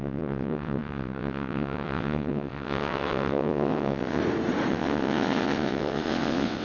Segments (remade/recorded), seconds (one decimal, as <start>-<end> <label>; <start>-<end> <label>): 0.0-4.2 remade; 4.2-4.7 recorded; 4.7-6.6 remade